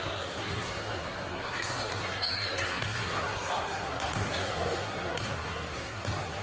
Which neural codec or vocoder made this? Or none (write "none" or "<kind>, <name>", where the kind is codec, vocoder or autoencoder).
codec, SNAC